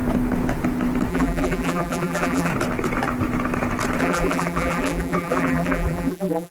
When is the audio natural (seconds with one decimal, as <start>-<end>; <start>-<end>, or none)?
0.0-1.1; 2.5-4.0